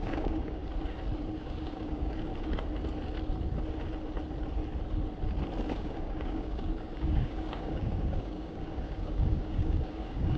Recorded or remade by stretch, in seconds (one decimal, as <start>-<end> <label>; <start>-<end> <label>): 0.0-0.6 remade; 0.6-1.4 recorded; 1.4-2.3 remade; 2.3-5.7 recorded; 5.7-10.4 remade